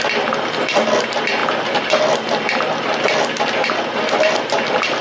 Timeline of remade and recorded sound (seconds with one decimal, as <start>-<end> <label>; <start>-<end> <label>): 0.0-5.0 recorded

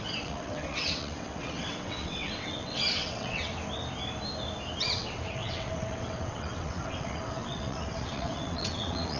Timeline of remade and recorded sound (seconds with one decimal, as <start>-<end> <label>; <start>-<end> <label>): 0.0-3.5 remade; 3.5-4.8 recorded; 4.8-9.2 remade